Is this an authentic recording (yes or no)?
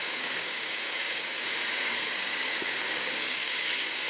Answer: no